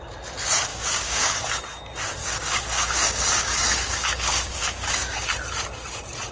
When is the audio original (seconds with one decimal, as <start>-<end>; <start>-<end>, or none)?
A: 0.0-0.7; 1.5-2.2; 5.3-6.3